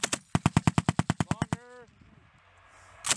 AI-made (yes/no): no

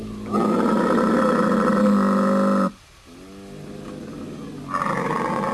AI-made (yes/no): no